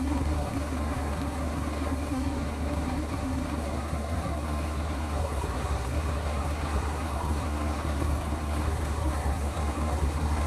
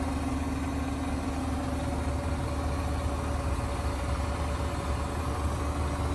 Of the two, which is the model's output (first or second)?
first